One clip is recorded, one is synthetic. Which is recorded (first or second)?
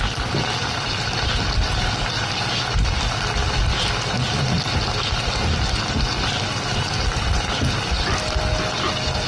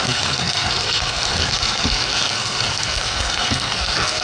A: first